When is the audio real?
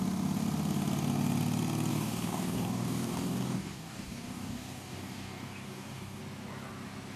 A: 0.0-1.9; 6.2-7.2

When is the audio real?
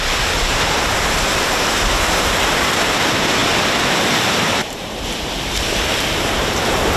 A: 3.4-4.0